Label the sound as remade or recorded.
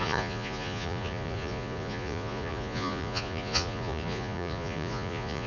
remade